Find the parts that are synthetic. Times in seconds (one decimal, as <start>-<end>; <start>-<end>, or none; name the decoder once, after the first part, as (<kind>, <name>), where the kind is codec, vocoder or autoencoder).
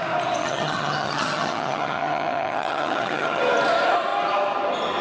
0.4-3.4 (vocoder, HiFi-GAN)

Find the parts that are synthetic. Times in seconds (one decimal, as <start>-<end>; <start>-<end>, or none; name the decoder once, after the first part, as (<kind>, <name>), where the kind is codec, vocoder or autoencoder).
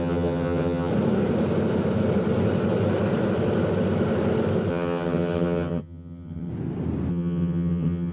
0.0-0.9 (vocoder, HiFi-GAN); 4.7-6.5; 7.1-8.1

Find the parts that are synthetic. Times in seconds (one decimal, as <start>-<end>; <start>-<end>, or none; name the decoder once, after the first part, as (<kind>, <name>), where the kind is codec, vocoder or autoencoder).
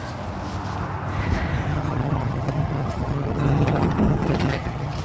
1.7-5.0 (vocoder, HiFi-GAN)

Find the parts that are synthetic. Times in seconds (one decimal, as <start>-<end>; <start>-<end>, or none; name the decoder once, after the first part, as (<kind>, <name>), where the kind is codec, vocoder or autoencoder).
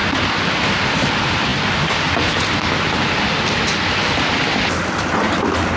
none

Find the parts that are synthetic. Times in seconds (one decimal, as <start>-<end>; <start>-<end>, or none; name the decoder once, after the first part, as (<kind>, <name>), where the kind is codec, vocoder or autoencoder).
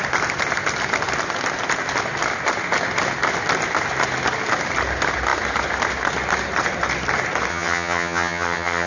7.5-8.9 (vocoder, HiFi-GAN)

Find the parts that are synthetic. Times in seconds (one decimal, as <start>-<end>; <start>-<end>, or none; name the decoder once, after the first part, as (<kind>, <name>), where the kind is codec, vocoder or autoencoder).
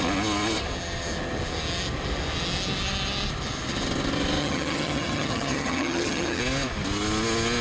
4.4-6.4 (vocoder, HiFi-GAN)